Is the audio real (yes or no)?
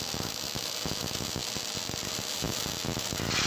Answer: yes